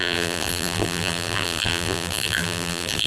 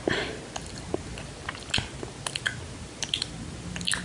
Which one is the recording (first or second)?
second